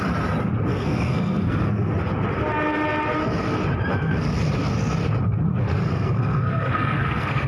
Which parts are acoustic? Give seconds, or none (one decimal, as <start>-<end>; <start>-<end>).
0.0-0.7; 1.9-3.9; 4.5-5.5